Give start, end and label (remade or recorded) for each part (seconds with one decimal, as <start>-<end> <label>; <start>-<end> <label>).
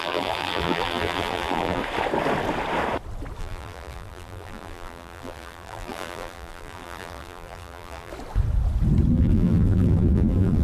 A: 0.0-1.8 remade; 1.8-3.4 recorded; 3.4-8.1 remade; 8.1-9.1 recorded; 9.1-10.6 remade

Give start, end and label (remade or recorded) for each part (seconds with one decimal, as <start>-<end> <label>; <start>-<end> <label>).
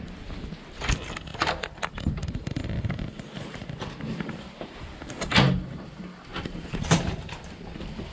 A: 0.0-1.3 recorded; 1.3-4.8 remade; 4.8-6.3 recorded; 6.3-7.4 remade; 7.4-8.1 recorded